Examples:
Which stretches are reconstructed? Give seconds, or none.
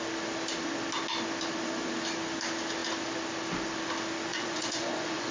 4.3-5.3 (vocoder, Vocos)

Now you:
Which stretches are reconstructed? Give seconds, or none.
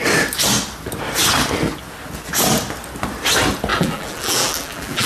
3.7-5.1 (vocoder, BigVGAN v2)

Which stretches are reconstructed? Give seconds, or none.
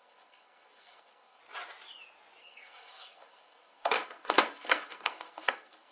0.0-1.4 (codec, SNAC); 2.4-5.9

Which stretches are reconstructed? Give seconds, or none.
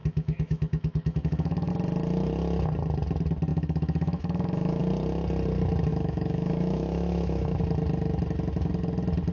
0.0-1.7 (autoencoder, DAC-VAE); 3.5-4.8; 5.9-7.6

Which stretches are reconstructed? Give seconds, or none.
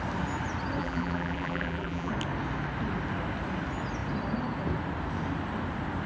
0.8-2.1 (vocoder, BigVGAN v2)